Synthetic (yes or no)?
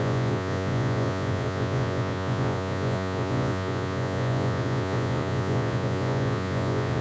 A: yes